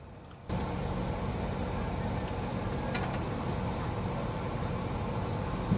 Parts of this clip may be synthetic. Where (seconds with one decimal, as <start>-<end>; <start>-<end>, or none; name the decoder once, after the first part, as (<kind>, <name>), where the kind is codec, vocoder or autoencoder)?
none